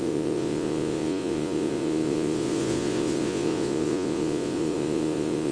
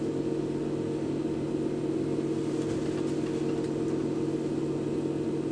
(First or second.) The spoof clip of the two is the first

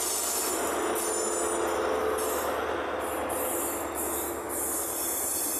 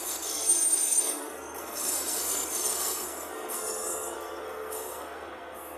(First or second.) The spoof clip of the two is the second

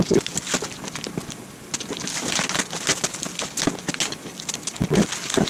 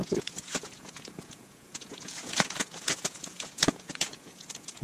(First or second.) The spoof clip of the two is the second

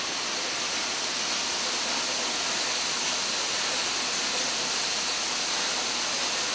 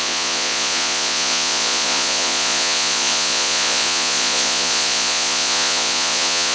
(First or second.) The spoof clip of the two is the second